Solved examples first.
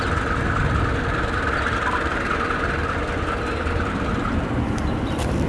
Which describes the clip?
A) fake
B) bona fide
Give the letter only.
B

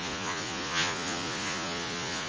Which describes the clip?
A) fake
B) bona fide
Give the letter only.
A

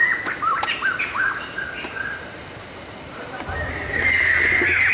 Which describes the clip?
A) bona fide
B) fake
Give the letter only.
B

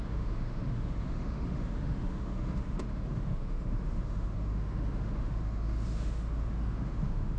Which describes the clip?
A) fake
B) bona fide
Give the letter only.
A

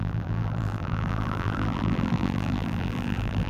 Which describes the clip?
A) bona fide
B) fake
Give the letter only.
B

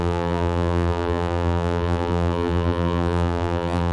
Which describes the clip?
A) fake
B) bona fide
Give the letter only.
A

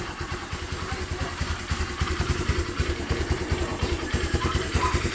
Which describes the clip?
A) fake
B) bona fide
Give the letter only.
A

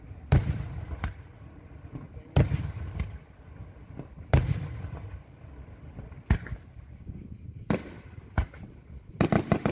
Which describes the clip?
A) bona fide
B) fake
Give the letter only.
A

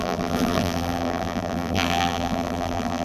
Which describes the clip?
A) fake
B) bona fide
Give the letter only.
A